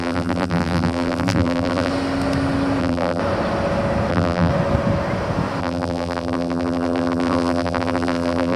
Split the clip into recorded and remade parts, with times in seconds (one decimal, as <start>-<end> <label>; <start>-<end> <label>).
0.0-1.9 remade; 1.9-2.8 recorded; 2.8-3.2 remade; 3.2-4.1 recorded; 4.1-4.5 remade; 4.5-5.6 recorded; 5.6-8.6 remade